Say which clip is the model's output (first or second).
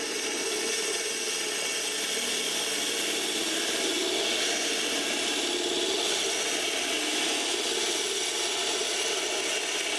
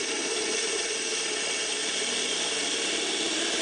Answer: second